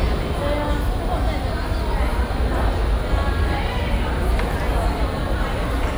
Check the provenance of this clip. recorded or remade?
recorded